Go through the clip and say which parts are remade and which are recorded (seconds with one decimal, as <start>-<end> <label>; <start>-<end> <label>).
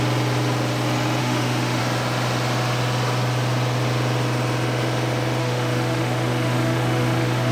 0.0-1.2 recorded; 1.2-1.8 remade; 1.8-5.4 recorded; 5.4-7.5 remade